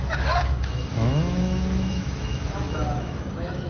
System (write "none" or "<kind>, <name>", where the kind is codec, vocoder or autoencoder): autoencoder, DAC-VAE